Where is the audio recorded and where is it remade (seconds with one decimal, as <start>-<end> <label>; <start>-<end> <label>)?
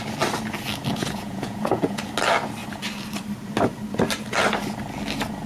0.0-0.9 recorded; 0.9-2.0 remade; 2.0-5.5 recorded